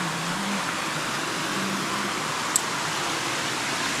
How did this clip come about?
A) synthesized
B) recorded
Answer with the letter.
B